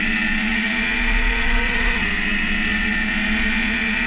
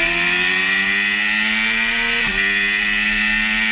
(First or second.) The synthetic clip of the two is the first